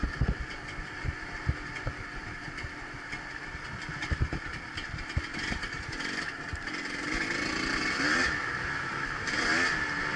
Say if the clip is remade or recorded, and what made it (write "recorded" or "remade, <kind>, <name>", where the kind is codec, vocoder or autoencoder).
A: recorded